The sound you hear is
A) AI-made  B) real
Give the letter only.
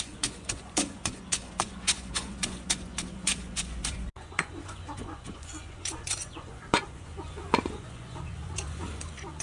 A